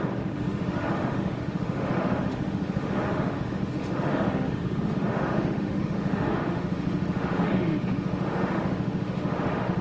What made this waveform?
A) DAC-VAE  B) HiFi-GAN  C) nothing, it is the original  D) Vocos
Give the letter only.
A